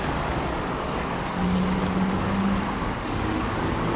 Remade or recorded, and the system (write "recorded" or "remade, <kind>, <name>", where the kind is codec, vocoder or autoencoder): remade, codec, DAC